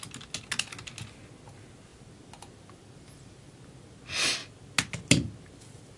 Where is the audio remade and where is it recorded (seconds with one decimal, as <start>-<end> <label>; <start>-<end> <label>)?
0.0-6.0 recorded